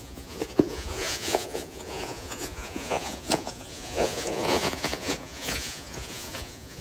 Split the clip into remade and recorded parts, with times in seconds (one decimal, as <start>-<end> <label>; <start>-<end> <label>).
0.0-6.8 remade